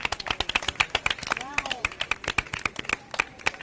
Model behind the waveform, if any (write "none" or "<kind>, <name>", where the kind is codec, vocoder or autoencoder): vocoder, BigVGAN v2